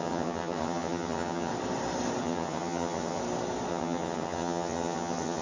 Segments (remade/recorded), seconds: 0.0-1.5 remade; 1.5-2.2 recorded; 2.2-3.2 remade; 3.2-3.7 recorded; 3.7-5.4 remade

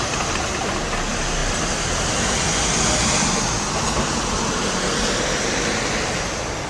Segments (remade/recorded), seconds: 0.0-6.7 recorded